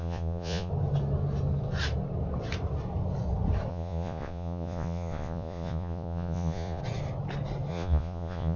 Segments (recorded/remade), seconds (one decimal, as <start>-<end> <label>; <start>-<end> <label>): 0.0-0.7 remade; 0.7-3.7 recorded; 3.7-6.8 remade; 6.8-7.7 recorded; 7.7-8.6 remade